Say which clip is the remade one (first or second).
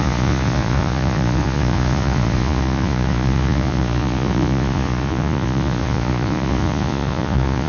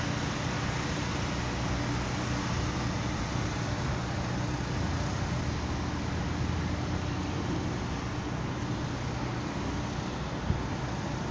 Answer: first